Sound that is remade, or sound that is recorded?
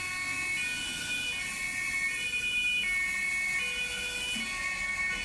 recorded